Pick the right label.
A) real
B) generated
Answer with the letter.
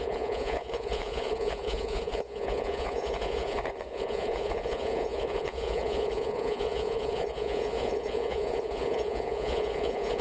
B